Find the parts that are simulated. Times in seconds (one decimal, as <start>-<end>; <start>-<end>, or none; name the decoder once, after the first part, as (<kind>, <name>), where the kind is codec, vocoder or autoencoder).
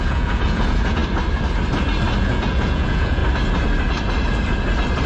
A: 0.0-1.0 (vocoder, Vocos); 2.2-3.2